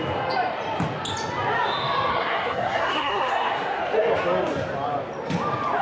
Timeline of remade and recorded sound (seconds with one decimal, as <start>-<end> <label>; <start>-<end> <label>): 0.0-2.1 recorded; 2.1-3.8 remade; 3.8-5.8 recorded

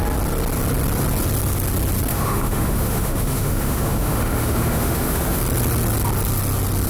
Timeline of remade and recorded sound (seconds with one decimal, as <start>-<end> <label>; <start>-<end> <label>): 0.0-2.1 recorded; 2.1-5.4 remade; 5.4-6.9 recorded

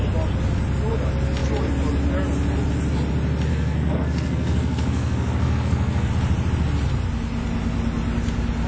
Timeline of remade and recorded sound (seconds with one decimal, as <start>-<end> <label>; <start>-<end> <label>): 0.0-3.5 recorded; 3.5-6.1 remade; 6.1-8.7 recorded

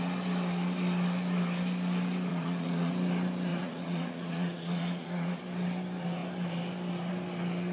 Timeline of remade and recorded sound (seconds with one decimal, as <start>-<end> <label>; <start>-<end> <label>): 0.0-2.3 recorded; 2.3-2.9 remade; 2.9-3.5 recorded; 3.5-5.4 remade; 5.4-7.7 recorded

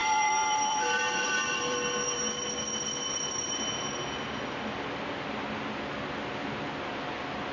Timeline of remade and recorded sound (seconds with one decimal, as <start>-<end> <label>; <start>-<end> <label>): 0.0-2.3 remade; 2.3-7.5 recorded

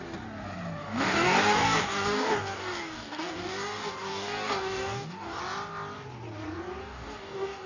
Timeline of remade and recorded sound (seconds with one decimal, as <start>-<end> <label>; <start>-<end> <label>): 0.0-0.8 recorded; 0.8-5.4 remade; 5.4-6.8 recorded; 6.8-7.7 remade

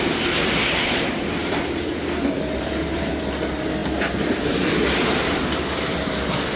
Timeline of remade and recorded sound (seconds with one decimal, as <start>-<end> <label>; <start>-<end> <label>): 0.0-1.4 recorded; 1.4-3.1 remade; 3.1-3.8 recorded; 3.8-5.6 remade; 5.6-6.6 recorded